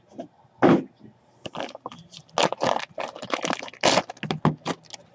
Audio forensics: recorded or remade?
recorded